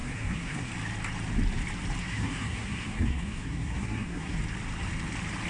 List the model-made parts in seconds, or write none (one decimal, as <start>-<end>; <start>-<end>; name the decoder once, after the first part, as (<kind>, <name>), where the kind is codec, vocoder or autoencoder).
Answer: 0.0-0.7 (codec, SNAC); 2.0-4.4